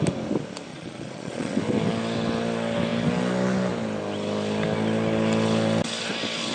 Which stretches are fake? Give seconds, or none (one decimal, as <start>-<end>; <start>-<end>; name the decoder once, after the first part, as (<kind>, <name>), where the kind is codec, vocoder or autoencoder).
0.7-1.6 (vocoder, Vocos)